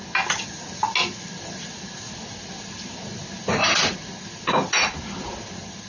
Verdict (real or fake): real